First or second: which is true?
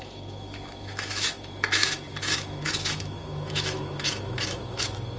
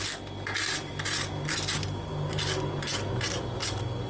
second